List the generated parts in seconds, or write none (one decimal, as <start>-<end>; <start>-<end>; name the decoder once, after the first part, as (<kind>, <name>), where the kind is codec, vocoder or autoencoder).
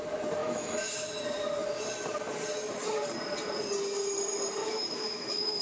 0.4-1.2 (autoencoder, DAC-VAE); 4.6-5.6